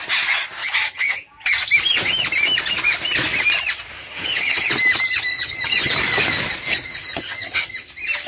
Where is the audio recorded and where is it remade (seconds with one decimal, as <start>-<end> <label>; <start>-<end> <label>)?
0.0-0.6 recorded; 0.6-1.2 remade; 1.2-4.0 recorded; 4.0-4.7 remade; 4.7-5.3 recorded; 5.3-5.9 remade; 5.9-7.0 recorded; 7.0-7.9 remade; 7.9-8.3 recorded